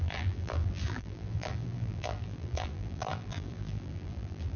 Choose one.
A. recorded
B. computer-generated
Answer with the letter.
B